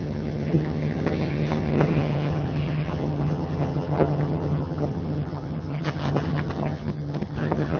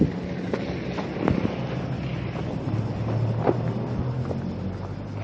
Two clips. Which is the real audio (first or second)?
second